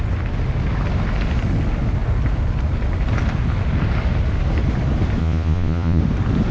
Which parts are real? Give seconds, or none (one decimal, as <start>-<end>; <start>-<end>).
0.0-5.2; 6.0-6.5